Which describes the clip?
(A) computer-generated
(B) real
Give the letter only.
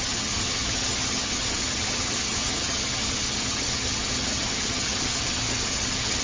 A